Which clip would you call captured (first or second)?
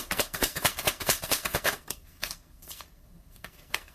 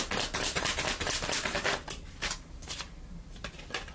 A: second